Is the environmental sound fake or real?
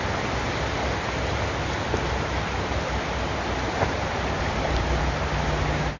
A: real